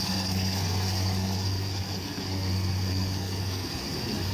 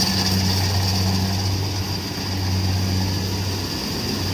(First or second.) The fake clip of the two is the first